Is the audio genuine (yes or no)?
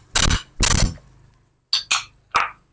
yes